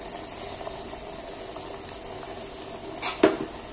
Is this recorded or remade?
recorded